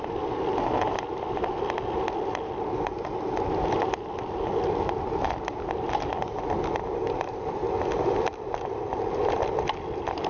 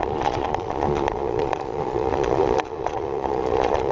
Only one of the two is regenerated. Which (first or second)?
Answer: second